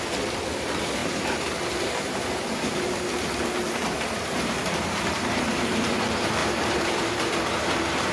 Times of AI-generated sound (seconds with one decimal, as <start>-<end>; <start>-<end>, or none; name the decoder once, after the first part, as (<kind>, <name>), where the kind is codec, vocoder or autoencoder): 1.0-2.9 (vocoder, BigVGAN v2); 3.8-6.0; 6.4-8.1